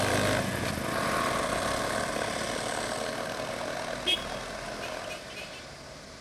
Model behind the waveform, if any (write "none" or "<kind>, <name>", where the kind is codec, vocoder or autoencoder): none